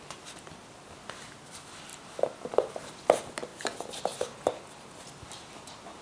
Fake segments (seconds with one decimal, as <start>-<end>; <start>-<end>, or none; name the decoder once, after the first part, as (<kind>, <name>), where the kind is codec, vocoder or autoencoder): none